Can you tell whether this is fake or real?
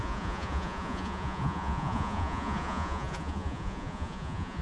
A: fake